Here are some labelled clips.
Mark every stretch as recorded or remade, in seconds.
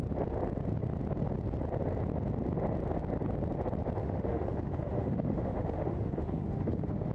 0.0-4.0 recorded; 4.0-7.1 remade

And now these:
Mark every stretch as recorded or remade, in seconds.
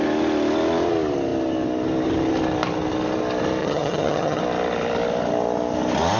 0.0-3.6 recorded; 3.6-4.4 remade; 4.4-6.2 recorded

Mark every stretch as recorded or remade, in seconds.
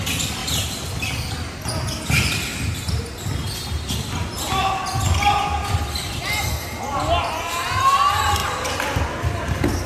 0.0-8.4 recorded; 8.4-9.0 remade; 9.0-9.9 recorded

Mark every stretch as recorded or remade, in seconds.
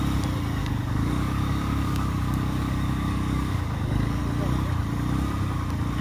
0.0-0.6 recorded; 0.6-4.2 remade; 4.2-6.0 recorded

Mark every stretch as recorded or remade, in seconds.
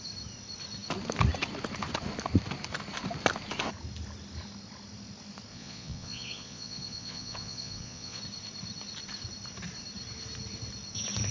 0.0-5.5 recorded; 5.5-8.2 remade; 8.2-11.3 recorded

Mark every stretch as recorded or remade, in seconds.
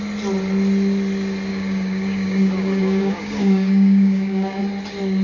0.0-1.5 recorded; 1.5-4.6 remade; 4.6-5.2 recorded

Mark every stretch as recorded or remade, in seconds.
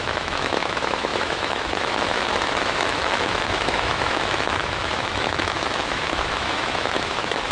0.0-7.5 remade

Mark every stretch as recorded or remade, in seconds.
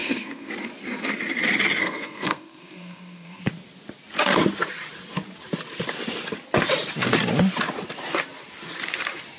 0.0-0.5 remade; 0.5-1.8 recorded; 1.8-3.4 remade; 3.4-9.4 recorded